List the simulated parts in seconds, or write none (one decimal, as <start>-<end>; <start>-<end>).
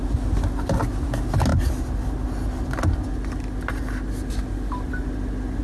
none